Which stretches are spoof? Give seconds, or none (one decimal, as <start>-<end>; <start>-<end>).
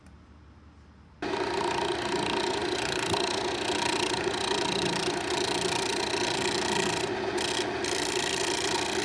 none